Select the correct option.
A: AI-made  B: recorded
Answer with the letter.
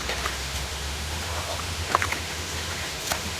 A